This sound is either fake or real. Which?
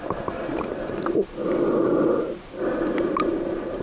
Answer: real